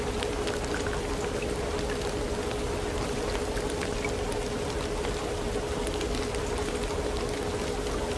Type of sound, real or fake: real